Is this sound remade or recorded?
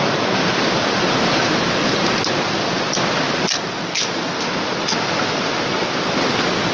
recorded